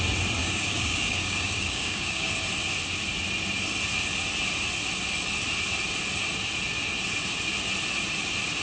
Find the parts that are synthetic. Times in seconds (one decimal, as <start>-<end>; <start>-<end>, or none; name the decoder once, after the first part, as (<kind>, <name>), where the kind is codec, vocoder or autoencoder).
0.4-2.3 (codec, DAC)